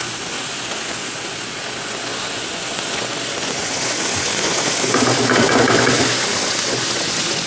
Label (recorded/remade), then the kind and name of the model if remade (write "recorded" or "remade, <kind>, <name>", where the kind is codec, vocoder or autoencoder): remade, vocoder, Vocos